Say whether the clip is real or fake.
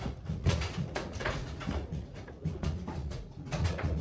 fake